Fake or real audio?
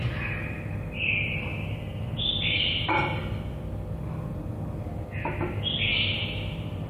real